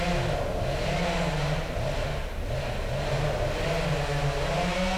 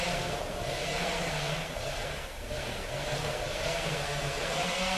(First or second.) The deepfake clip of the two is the second